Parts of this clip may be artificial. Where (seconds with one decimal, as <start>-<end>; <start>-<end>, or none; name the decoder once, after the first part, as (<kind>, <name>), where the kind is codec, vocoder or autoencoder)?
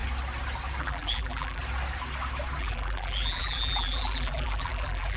0.8-1.6 (vocoder, BigVGAN v2); 2.6-5.2